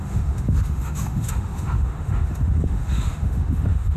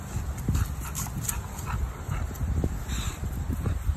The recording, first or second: second